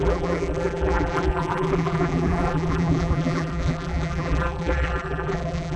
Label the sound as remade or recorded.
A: remade